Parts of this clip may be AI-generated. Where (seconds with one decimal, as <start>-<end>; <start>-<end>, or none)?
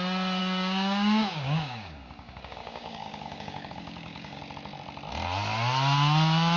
0.4-4.4